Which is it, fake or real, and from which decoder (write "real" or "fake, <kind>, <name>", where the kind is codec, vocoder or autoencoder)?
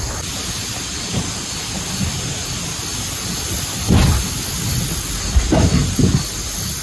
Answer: real